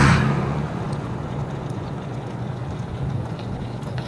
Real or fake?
fake